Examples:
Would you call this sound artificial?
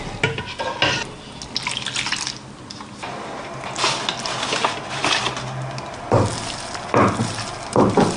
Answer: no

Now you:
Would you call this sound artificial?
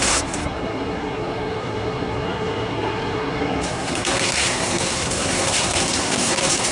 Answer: yes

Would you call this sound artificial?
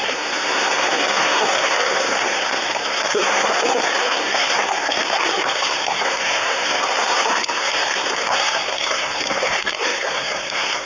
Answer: yes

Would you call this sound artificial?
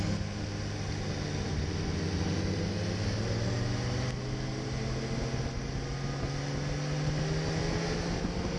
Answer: no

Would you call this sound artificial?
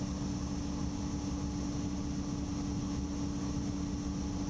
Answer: no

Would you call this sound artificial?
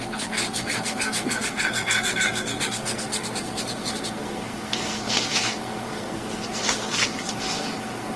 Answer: yes